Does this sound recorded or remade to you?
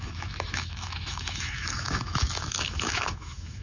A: remade